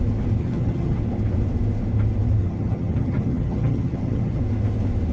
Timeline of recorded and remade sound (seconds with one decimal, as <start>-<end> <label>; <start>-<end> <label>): 0.0-0.4 recorded; 0.4-1.0 remade; 1.0-2.4 recorded; 2.4-4.4 remade; 4.4-5.1 recorded